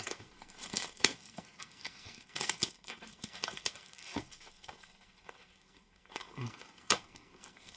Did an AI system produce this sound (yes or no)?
yes